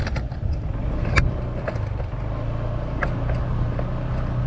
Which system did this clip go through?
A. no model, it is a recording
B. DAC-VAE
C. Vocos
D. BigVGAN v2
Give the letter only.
A